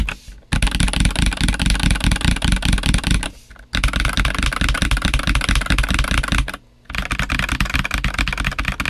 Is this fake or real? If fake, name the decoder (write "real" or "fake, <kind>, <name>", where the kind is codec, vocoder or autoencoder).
real